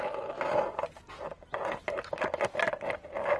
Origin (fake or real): real